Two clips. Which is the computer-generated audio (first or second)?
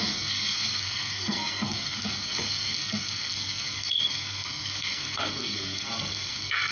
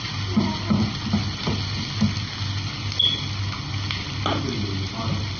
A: first